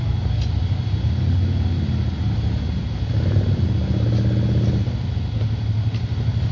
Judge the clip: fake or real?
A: real